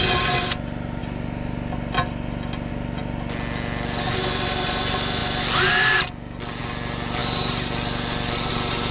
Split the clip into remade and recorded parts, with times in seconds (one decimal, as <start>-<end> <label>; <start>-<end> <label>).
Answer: 0.0-8.9 recorded